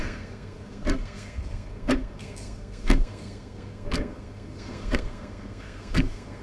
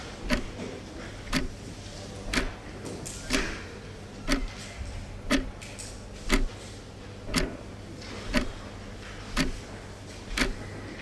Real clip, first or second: second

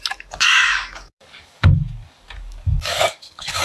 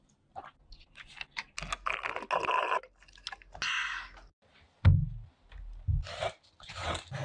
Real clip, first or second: second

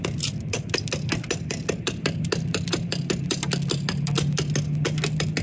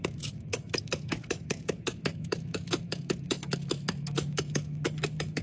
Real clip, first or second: first